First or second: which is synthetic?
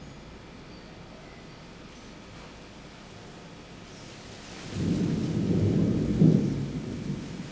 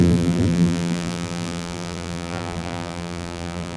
second